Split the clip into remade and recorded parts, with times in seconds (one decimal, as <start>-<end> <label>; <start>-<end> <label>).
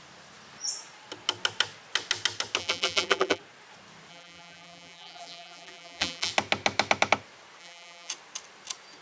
0.0-2.6 recorded; 2.6-3.4 remade; 3.4-4.1 recorded; 4.1-6.3 remade; 6.3-7.6 recorded; 7.6-8.1 remade; 8.1-9.0 recorded